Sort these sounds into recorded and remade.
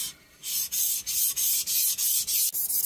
recorded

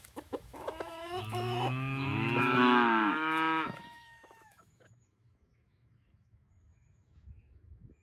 remade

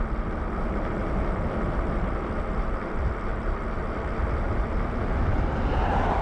recorded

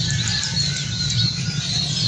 recorded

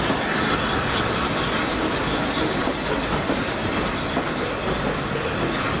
recorded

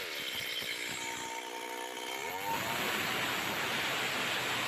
recorded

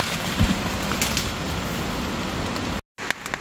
recorded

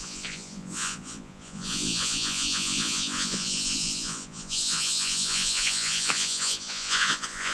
remade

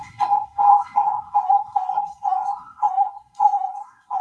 remade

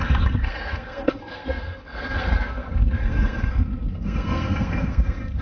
remade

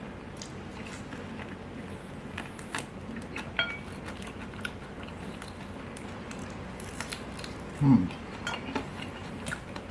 recorded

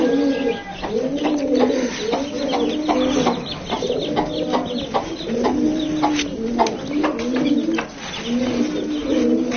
recorded